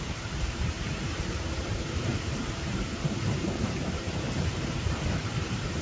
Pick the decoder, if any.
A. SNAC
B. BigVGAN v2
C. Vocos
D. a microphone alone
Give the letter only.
B